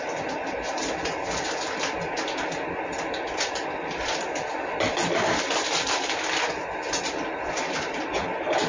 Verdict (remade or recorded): recorded